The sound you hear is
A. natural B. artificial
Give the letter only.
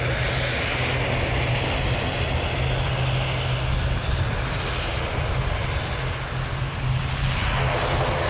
A